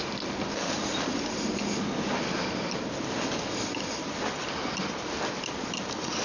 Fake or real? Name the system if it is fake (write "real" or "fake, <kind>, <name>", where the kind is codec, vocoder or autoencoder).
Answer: real